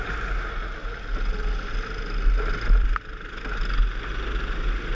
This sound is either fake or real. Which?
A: real